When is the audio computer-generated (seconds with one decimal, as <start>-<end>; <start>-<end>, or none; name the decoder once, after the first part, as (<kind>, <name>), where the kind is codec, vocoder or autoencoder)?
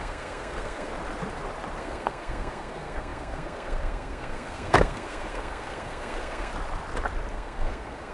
0.0-0.9 (codec, SNAC); 1.8-6.5; 7.3-8.1